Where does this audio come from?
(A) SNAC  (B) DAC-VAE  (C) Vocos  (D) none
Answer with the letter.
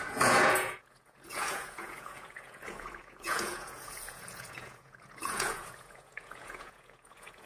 C